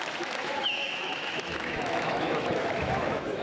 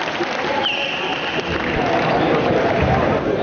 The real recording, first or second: second